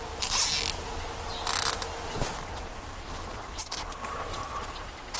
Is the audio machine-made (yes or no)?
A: no